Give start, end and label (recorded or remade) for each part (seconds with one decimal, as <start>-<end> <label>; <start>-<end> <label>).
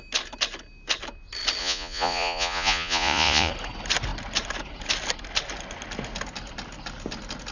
0.0-1.6 recorded; 1.6-3.5 remade; 3.5-7.5 recorded